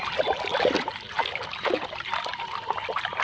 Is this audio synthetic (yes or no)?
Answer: no